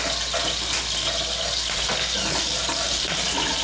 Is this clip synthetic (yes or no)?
no